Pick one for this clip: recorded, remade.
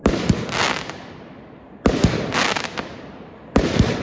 recorded